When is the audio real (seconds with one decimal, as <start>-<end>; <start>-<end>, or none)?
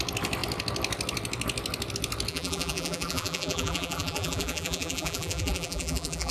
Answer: 0.0-2.3